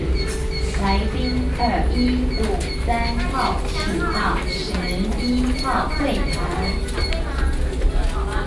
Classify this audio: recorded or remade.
recorded